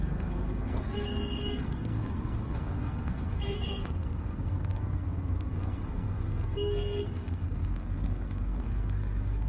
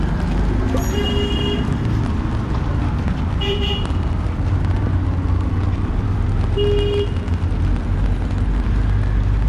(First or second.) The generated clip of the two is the first